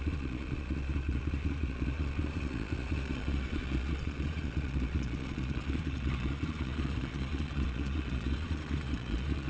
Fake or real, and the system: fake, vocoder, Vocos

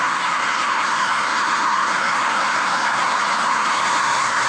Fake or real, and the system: fake, codec, SNAC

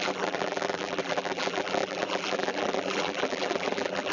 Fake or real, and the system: fake, vocoder, BigVGAN v2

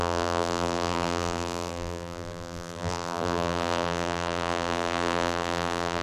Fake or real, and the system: fake, vocoder, BigVGAN v2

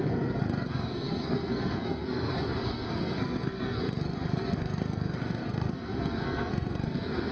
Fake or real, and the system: fake, codec, SNAC